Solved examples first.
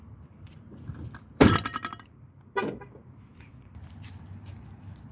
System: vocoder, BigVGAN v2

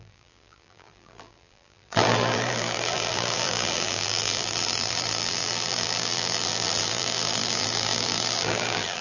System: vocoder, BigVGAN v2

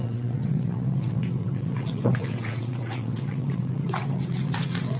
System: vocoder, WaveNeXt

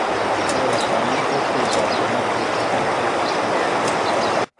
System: none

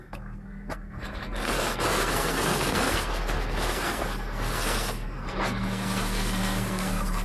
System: codec, SNAC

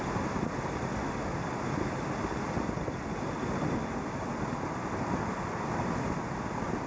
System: none